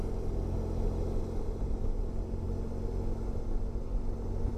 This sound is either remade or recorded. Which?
recorded